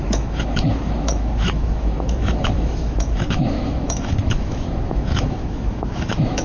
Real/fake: fake